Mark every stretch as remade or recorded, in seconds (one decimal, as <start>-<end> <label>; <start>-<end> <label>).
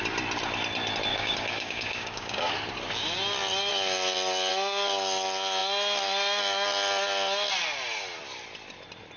0.0-1.1 recorded; 1.1-2.5 remade; 2.5-9.2 recorded